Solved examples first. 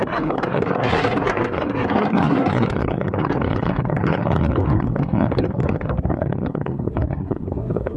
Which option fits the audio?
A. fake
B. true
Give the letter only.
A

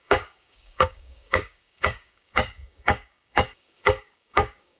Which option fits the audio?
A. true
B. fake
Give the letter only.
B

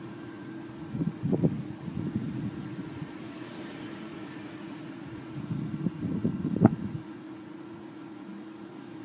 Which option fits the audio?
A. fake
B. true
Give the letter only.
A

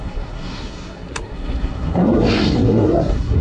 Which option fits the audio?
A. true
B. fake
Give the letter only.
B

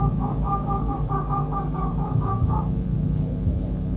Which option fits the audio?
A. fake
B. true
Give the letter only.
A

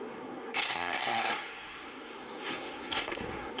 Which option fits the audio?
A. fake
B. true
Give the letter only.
A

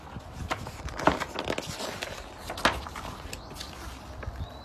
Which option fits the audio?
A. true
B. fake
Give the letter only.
A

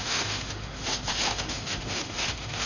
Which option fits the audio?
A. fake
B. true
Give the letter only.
A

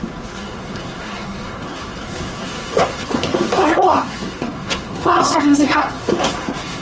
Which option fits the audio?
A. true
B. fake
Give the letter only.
B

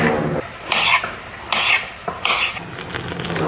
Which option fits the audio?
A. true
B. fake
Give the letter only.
A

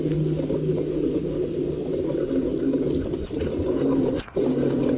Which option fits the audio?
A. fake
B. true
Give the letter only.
B